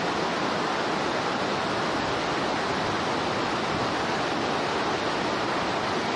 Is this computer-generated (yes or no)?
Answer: no